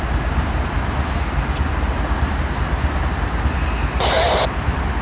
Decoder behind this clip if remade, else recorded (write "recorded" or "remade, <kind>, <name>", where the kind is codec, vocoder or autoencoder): recorded